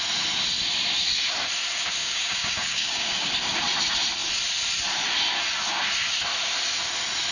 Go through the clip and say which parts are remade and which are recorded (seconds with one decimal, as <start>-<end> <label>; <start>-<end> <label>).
0.0-2.0 recorded; 2.0-3.3 remade; 3.3-7.3 recorded